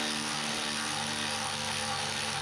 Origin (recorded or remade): recorded